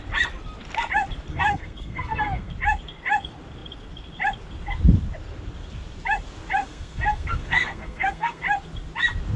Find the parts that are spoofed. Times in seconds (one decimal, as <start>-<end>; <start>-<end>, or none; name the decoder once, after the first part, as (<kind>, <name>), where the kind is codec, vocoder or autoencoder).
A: 1.3-2.5 (codec, SNAC); 6.6-8.4